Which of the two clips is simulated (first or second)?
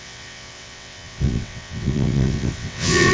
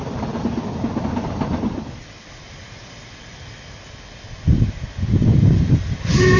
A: first